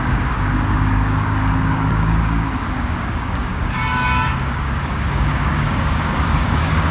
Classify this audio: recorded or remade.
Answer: remade